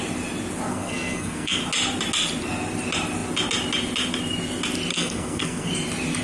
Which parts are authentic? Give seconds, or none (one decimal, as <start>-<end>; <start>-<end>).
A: 0.0-0.7; 1.6-4.9; 5.7-6.2